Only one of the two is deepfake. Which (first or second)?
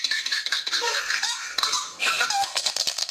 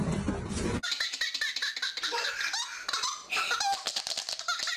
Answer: first